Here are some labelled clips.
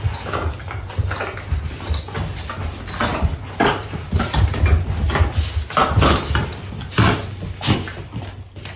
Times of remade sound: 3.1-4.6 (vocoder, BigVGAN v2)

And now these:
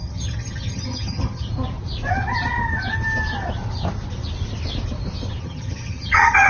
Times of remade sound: 0.0-1.5 (vocoder, HiFi-GAN); 5.4-6.5

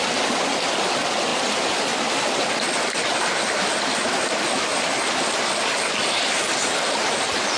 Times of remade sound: none

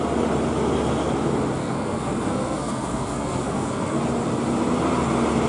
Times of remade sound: 1.6-4.0 (codec, SNAC)

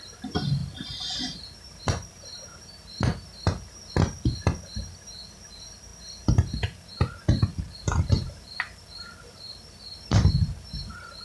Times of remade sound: 0.0-0.6 (vocoder, BigVGAN v2); 3.9-5.9; 7.8-11.2

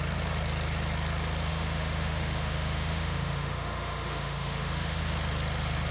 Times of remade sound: 1.5-5.0 (autoencoder, DAC-VAE)

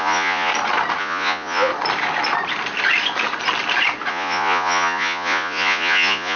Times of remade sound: 0.0-0.5 (vocoder, Vocos); 1.0-1.7; 4.1-6.4